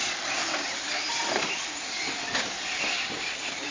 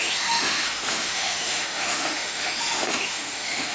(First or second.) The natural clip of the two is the first